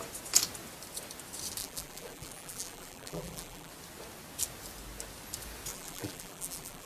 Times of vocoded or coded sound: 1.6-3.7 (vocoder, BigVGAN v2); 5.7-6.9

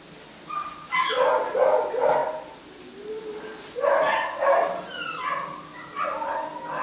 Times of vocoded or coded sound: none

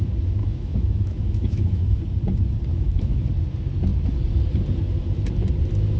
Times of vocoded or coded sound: 0.4-2.0 (autoencoder, DAC-VAE); 2.7-3.2

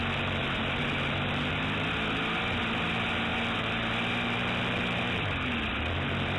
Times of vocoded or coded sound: none

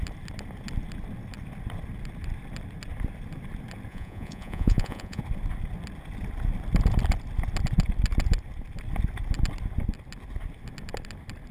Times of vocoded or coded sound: 3.9-5.2 (vocoder, Vocos)